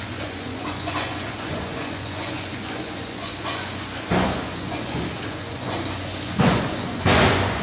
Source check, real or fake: fake